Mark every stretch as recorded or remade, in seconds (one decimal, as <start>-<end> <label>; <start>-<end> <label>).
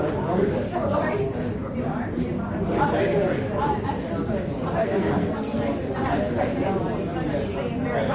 0.0-4.8 recorded; 4.8-5.6 remade; 5.6-8.1 recorded